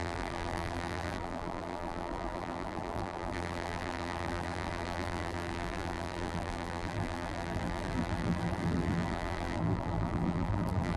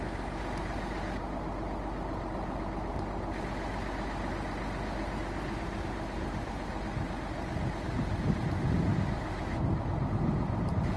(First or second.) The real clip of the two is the second